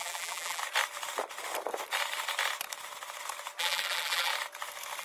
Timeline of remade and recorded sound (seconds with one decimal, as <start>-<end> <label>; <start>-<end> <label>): 0.0-0.6 remade; 0.6-3.6 recorded; 3.6-4.3 remade; 4.3-5.0 recorded